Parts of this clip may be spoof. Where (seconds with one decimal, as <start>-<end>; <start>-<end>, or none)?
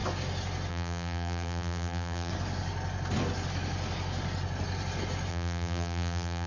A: 0.7-2.3; 5.3-6.5